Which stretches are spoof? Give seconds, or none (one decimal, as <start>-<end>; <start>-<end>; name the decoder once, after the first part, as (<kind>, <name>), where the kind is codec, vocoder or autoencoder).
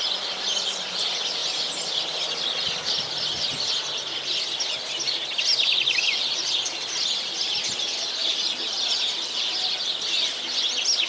none